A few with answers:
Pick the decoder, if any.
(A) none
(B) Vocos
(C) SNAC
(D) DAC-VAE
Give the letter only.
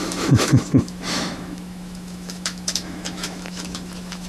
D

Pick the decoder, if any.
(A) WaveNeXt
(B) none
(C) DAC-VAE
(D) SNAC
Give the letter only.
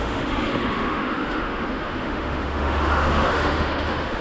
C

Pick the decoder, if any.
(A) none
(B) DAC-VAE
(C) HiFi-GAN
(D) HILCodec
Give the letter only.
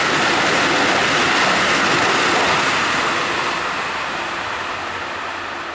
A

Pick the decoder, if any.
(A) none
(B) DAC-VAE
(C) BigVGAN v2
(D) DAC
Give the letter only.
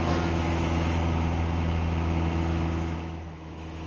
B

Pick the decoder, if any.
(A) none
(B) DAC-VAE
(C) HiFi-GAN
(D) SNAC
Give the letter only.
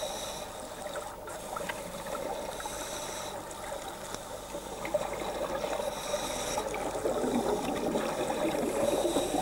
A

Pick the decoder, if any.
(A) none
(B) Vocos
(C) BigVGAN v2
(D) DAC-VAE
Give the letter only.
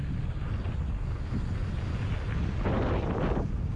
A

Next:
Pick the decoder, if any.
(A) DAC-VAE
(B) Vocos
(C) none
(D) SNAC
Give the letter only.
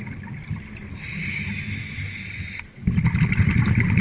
C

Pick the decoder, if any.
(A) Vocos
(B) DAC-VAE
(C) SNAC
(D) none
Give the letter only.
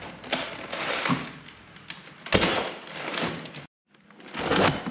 D